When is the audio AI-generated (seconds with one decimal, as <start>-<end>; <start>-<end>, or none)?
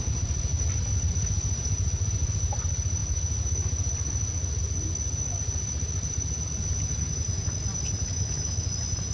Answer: 8.1-8.7